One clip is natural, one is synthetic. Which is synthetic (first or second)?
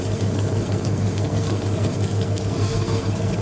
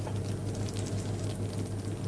first